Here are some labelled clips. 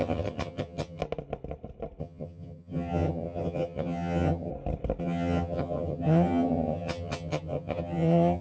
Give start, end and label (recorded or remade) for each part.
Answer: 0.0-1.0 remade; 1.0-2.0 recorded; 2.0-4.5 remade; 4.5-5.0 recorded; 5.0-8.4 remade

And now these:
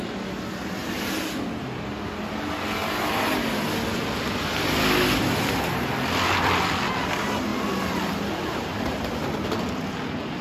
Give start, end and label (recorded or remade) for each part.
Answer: 0.0-0.8 recorded; 0.8-1.4 remade; 1.4-7.5 recorded; 7.5-9.3 remade; 9.3-10.4 recorded

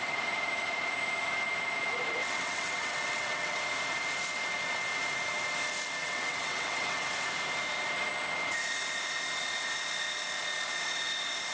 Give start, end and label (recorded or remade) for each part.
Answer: 0.0-2.2 recorded; 2.2-3.6 remade; 3.6-6.0 recorded; 6.0-7.0 remade; 7.0-11.5 recorded

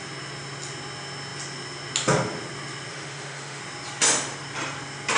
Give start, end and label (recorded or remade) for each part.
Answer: 0.0-2.9 recorded; 2.9-3.6 remade; 3.6-5.2 recorded

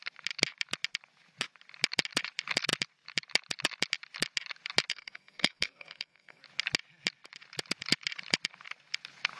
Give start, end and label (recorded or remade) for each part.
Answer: 0.0-4.9 recorded; 4.9-6.4 remade; 6.4-9.4 recorded

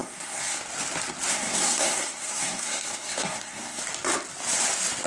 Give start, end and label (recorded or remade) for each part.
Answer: 0.0-0.6 remade; 0.6-1.3 recorded; 1.3-3.8 remade; 3.8-5.1 recorded